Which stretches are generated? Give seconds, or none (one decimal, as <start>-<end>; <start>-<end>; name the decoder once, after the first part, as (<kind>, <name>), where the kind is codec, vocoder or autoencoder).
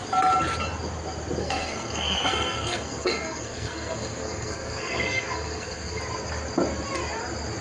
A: 1.4-6.0 (codec, SNAC)